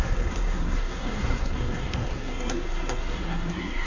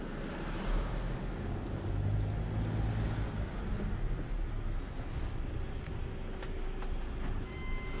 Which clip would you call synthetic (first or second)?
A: first